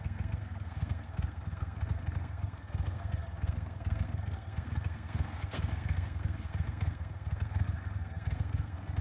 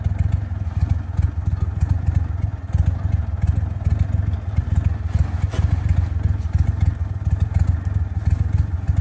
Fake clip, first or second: first